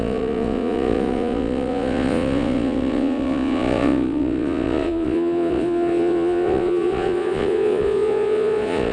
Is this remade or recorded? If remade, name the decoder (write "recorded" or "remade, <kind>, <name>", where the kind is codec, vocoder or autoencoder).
remade, vocoder, Vocos